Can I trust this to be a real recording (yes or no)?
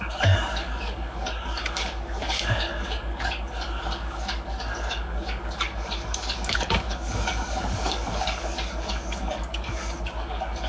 no